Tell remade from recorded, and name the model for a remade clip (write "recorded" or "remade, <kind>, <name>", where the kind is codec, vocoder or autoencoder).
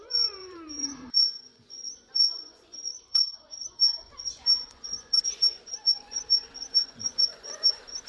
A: remade, vocoder, Vocos